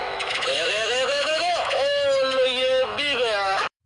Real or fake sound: fake